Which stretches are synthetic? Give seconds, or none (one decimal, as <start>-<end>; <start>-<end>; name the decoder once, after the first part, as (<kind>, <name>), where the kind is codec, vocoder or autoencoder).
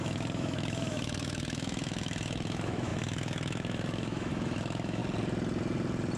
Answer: 0.0-5.0 (autoencoder, DAC-VAE)